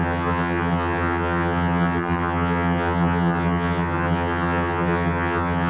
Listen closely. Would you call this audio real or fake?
fake